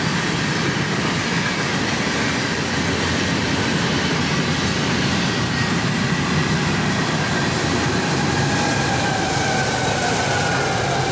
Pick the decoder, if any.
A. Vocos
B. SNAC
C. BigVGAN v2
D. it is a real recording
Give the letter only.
D